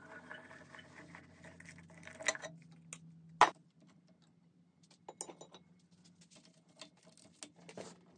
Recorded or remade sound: recorded